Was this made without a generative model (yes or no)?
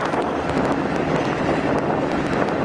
yes